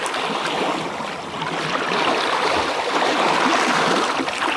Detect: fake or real real